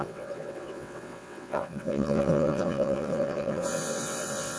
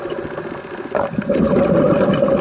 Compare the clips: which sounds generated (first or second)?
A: first